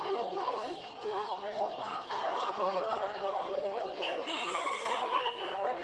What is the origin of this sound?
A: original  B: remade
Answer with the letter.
B